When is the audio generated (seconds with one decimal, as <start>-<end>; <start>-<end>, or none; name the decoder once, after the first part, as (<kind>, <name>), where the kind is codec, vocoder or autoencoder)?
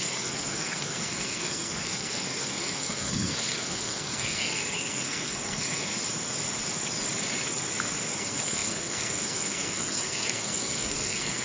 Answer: 0.0-5.9 (codec, SNAC); 8.1-11.4